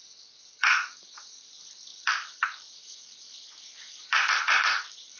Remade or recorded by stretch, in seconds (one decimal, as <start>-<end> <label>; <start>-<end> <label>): 0.0-0.6 recorded; 0.6-1.5 remade; 1.5-1.9 recorded; 1.9-5.2 remade